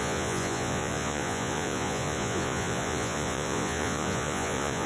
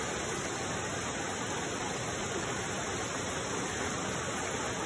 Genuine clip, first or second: second